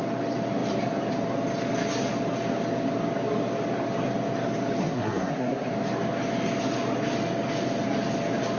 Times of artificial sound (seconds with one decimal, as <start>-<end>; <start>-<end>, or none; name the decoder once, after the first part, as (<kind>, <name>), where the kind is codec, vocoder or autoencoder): 4.8-5.7 (codec, SNAC)